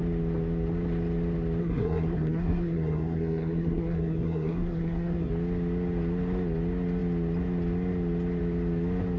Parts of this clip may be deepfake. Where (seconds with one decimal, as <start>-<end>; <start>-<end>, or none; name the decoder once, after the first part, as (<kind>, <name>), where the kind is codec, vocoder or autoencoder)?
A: 1.6-5.3 (codec, SNAC)